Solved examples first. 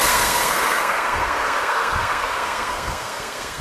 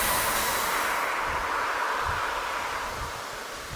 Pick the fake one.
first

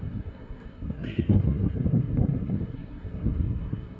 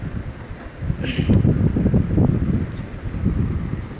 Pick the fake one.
first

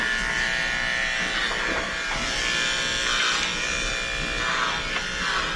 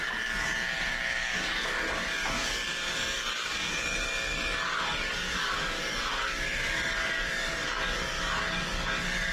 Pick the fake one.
second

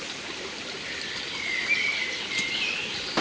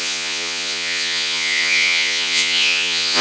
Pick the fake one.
second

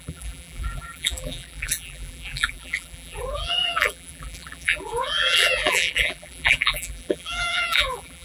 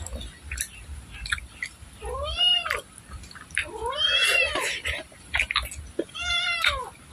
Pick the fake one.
first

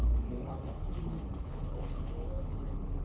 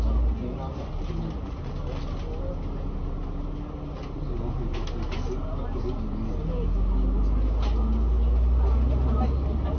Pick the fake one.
first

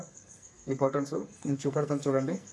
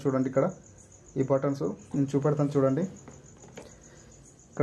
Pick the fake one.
first